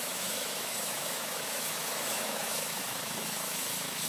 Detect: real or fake fake